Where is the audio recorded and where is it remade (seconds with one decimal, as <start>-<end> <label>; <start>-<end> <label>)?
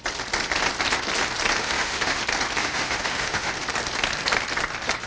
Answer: 0.0-1.6 recorded; 1.6-2.2 remade; 2.2-2.6 recorded; 2.6-3.5 remade; 3.5-5.1 recorded